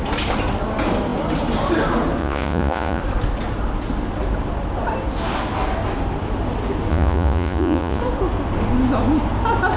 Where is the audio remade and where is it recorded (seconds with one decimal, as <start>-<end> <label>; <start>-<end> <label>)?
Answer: 0.0-2.2 recorded; 2.2-3.0 remade; 3.0-6.9 recorded; 6.9-8.0 remade; 8.0-9.8 recorded